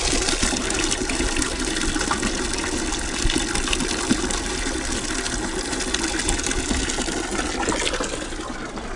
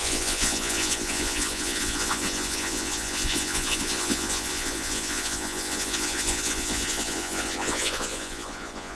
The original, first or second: first